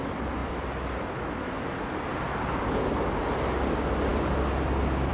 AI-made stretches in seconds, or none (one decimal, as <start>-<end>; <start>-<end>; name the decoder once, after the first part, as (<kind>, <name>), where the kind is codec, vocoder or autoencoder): none